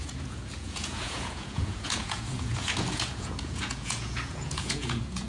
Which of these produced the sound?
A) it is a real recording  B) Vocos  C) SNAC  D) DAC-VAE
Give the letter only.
B